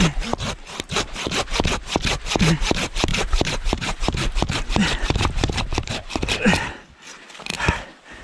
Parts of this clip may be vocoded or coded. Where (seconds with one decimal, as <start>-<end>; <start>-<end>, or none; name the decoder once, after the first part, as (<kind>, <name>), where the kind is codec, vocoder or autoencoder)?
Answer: 3.1-6.6 (vocoder, BigVGAN v2)